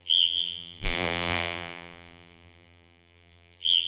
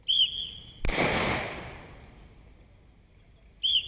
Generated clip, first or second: first